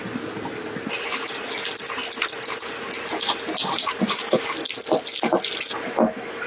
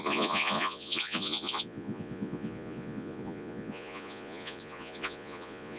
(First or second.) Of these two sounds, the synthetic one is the second